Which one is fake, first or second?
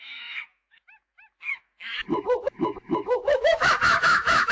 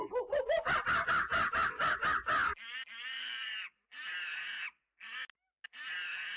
first